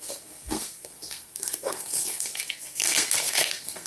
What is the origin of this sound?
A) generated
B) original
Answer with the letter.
A